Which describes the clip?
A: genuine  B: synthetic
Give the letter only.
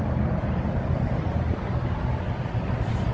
A